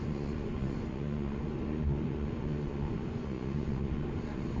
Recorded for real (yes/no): no